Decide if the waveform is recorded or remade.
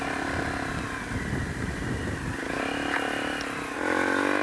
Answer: recorded